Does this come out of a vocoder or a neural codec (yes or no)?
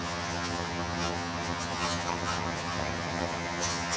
yes